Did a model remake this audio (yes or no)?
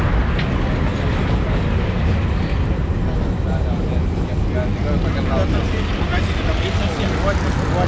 no